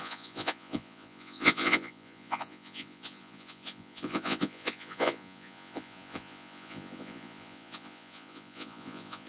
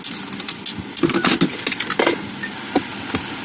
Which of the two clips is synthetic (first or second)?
first